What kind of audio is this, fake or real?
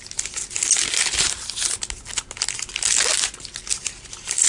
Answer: real